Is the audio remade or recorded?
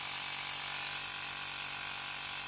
recorded